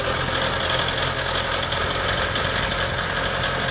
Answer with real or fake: real